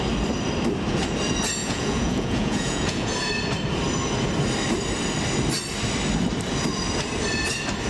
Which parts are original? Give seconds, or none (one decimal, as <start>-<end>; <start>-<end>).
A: 0.0-1.6; 3.3-7.9